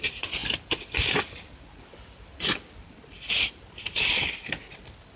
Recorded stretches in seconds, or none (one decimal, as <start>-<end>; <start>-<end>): 0.0-5.2